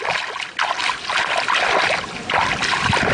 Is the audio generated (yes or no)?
no